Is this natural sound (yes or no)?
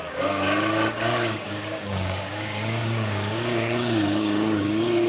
no